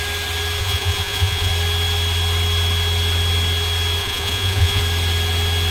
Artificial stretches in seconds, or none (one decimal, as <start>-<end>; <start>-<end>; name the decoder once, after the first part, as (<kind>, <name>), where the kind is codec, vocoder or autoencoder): 0.6-1.5 (vocoder, Vocos); 4.0-4.8